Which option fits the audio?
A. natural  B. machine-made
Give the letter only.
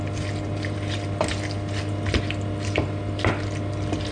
A